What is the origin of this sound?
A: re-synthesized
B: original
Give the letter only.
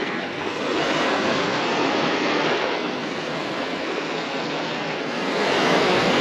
A